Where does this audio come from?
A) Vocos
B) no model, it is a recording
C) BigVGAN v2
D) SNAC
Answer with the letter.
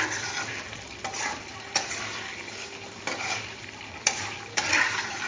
C